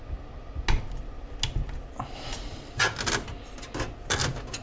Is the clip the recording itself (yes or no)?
yes